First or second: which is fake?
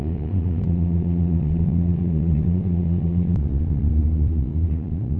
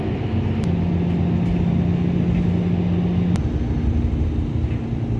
first